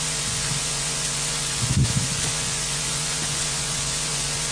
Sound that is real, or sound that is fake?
fake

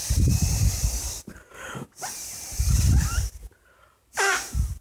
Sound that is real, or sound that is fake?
real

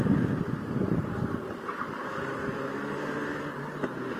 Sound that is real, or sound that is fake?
fake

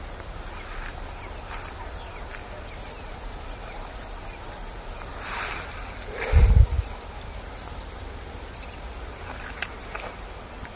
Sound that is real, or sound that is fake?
real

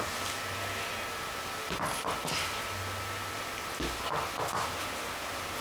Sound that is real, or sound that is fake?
real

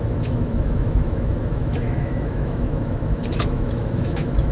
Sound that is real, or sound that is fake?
fake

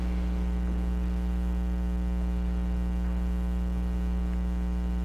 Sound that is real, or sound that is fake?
real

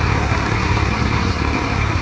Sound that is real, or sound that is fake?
fake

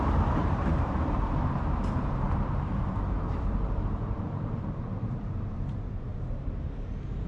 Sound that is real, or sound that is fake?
fake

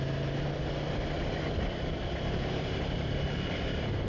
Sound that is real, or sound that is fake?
real